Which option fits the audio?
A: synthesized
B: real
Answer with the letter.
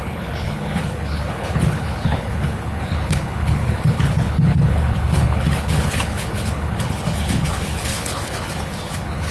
A